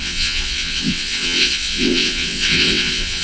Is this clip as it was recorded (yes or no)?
no